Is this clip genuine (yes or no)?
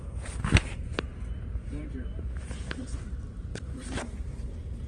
no